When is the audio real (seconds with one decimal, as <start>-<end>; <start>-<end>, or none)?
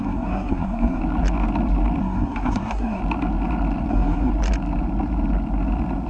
1.0-2.0; 3.0-3.9; 4.3-6.1